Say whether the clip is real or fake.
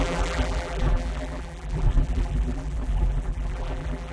fake